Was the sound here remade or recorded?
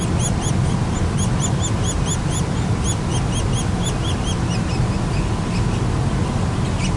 recorded